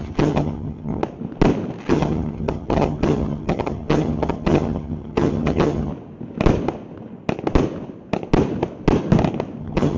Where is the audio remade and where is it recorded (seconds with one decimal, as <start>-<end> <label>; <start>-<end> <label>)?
0.0-1.0 remade; 1.0-1.9 recorded; 1.9-5.9 remade; 5.9-9.6 recorded; 9.6-10.0 remade